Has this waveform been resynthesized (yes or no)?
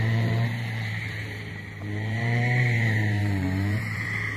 yes